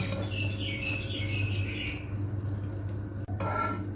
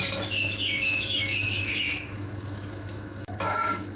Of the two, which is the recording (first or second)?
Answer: first